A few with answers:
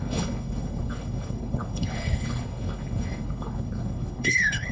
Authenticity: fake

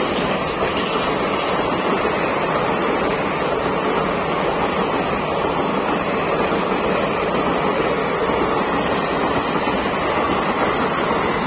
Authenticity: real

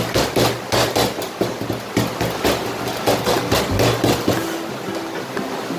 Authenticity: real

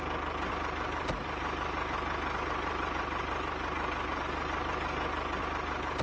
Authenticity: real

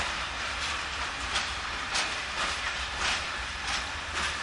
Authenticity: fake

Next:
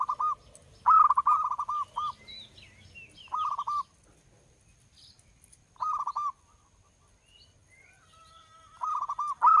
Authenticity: real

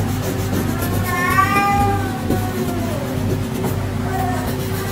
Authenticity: real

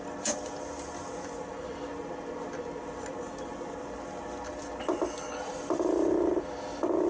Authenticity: real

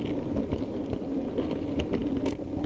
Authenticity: real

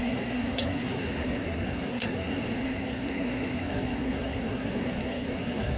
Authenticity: fake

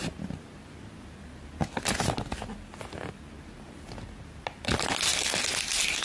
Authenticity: real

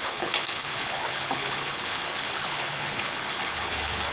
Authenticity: fake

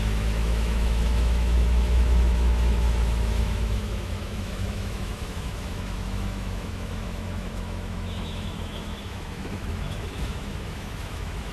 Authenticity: fake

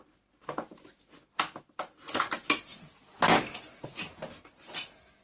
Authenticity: real